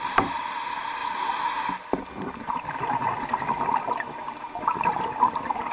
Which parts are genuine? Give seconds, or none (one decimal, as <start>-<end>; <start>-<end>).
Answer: 0.0-5.7

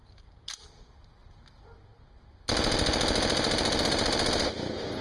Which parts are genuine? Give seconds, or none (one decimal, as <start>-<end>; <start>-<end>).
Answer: 0.0-5.0

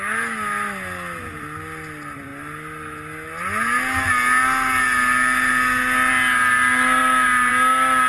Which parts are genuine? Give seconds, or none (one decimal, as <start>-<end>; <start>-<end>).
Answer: 0.0-8.1

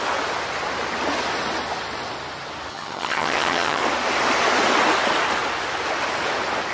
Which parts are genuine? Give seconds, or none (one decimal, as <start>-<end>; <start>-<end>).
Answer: 0.0-2.7; 3.8-6.7